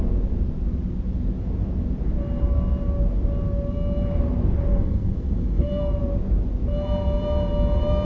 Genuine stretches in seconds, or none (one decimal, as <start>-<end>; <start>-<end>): 0.0-4.7; 5.8-8.0